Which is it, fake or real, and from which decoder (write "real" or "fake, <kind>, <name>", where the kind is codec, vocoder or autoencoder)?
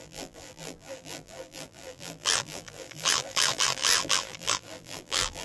fake, vocoder, BigVGAN v2